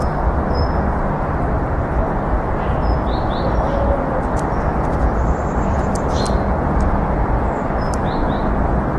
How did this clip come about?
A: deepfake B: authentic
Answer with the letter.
B